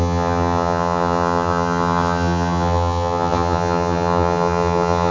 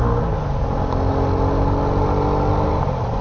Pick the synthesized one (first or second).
first